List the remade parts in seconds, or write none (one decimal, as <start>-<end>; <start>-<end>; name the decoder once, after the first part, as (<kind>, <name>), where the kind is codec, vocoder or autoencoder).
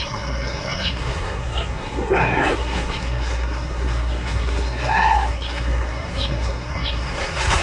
0.0-7.6 (codec, SNAC)